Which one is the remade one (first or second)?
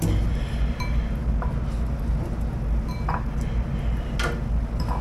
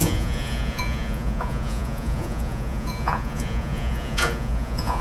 second